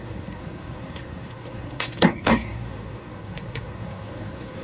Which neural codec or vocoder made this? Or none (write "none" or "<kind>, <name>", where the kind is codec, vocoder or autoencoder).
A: codec, SNAC